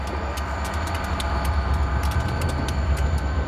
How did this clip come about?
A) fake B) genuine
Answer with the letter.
B